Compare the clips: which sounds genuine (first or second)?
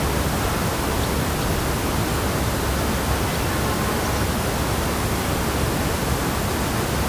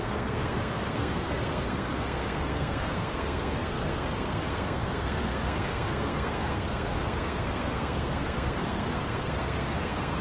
first